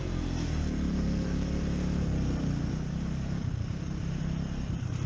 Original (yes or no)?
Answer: no